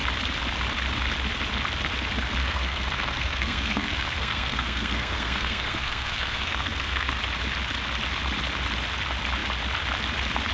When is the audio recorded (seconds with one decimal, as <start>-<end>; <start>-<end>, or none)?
0.0-2.4; 7.2-10.5